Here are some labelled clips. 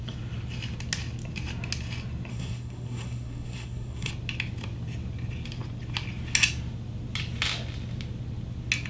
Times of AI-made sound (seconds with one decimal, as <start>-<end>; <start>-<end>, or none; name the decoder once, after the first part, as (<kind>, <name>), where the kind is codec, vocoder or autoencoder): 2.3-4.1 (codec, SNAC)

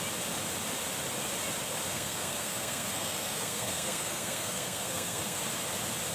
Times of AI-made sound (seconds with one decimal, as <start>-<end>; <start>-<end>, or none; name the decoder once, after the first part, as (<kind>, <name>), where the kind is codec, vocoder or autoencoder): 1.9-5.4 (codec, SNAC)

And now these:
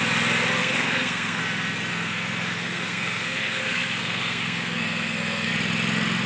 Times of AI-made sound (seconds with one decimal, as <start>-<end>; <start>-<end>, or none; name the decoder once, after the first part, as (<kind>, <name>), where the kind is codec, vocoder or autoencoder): 0.6-1.4 (codec, SNAC); 1.9-5.5

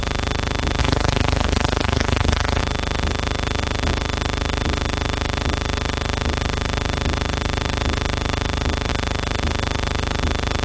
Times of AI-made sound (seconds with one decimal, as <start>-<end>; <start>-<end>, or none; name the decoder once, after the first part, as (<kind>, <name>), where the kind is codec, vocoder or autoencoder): 0.8-2.6 (codec, SNAC)